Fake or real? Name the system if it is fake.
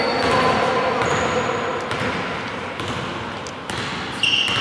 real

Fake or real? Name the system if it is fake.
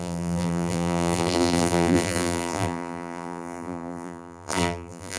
fake, vocoder, BigVGAN v2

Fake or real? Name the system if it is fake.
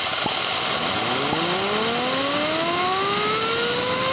fake, vocoder, BigVGAN v2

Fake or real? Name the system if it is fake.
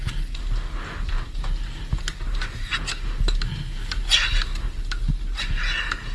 real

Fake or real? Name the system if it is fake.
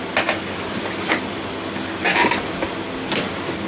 real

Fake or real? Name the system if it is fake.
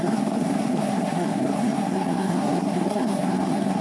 fake, codec, SNAC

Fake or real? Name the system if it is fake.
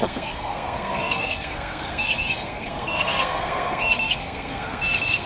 fake, codec, SNAC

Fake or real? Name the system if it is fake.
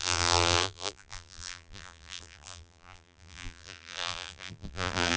fake, vocoder, BigVGAN v2